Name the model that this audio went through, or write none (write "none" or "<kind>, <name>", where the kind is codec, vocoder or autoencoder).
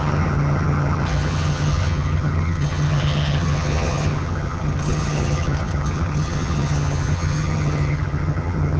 vocoder, HiFi-GAN